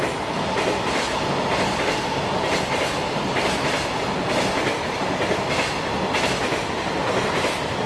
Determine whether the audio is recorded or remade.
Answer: recorded